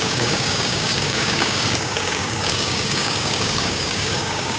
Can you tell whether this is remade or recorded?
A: remade